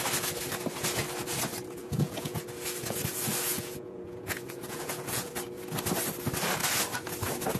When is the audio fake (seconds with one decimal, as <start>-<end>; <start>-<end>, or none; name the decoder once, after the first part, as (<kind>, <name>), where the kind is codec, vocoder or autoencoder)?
1.8-2.4 (vocoder, Vocos); 2.8-5.3